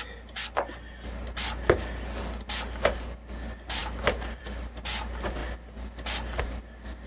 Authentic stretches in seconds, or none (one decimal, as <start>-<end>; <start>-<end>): 0.0-7.1